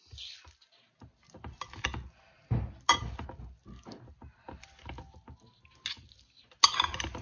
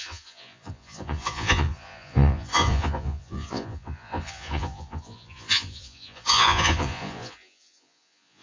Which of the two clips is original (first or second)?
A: first